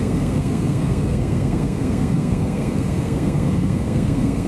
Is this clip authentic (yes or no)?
no